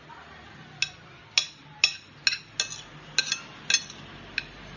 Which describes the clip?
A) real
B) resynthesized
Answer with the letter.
A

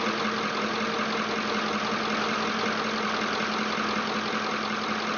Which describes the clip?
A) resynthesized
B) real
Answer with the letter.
B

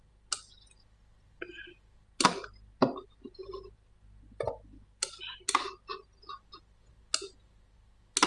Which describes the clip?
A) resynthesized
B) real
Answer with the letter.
B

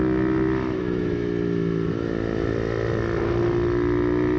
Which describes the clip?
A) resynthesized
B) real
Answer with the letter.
B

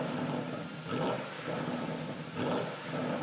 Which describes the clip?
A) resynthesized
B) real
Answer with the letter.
B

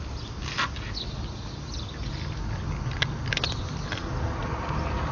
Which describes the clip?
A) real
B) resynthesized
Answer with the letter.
A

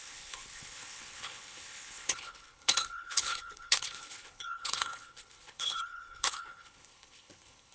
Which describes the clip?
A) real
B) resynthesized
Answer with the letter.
B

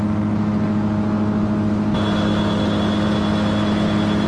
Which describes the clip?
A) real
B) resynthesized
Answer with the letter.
A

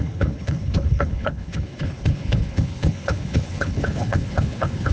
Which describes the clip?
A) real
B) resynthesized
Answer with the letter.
B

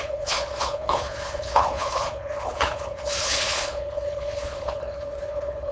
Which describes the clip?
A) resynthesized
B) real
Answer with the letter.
A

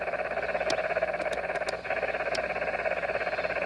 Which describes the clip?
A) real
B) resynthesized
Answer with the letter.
A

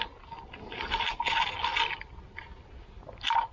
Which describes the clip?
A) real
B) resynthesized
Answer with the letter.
A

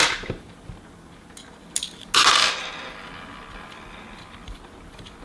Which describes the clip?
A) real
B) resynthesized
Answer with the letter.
A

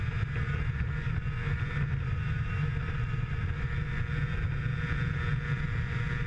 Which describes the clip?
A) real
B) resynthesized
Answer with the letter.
A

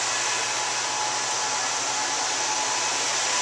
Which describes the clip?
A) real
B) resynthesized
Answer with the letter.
A